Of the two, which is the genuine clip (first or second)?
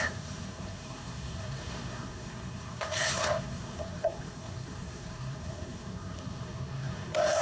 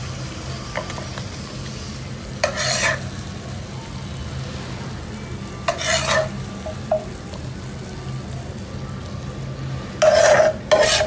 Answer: second